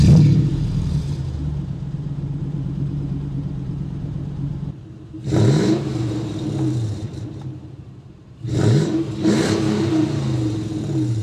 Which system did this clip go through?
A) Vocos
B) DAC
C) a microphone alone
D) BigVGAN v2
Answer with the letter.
D